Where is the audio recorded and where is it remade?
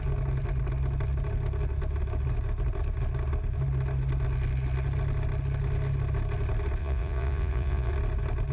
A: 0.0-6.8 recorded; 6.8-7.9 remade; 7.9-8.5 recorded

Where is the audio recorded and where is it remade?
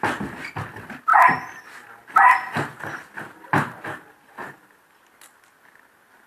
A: 0.0-6.3 recorded